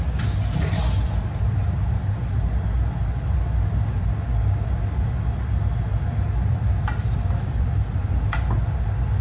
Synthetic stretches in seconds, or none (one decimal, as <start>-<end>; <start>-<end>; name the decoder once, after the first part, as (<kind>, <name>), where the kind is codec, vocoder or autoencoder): 5.9-8.1 (vocoder, BigVGAN v2)